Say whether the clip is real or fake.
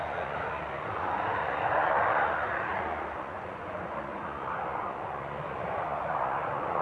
fake